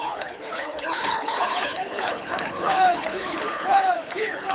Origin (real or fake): fake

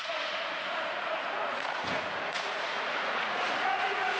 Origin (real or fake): fake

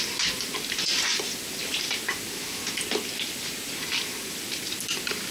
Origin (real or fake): real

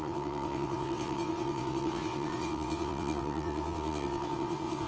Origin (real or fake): fake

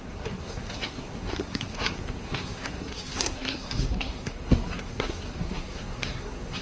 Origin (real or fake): fake